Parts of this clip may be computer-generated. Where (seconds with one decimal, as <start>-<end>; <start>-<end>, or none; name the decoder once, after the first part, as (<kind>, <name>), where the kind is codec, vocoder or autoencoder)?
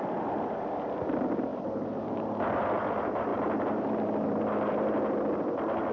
none